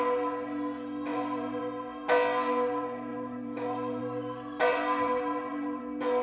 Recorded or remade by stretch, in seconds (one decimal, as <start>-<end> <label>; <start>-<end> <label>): 0.0-1.1 recorded; 1.1-1.6 remade; 1.6-3.1 recorded; 3.1-4.0 remade; 4.0-4.7 recorded; 4.7-5.8 remade; 5.8-6.2 recorded